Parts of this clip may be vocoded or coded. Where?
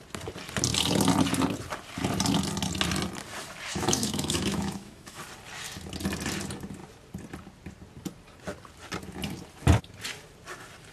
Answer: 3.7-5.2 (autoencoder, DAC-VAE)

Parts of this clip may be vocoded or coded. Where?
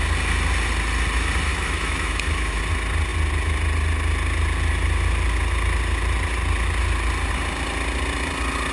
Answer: 1.5-2.6 (autoencoder, DAC-VAE)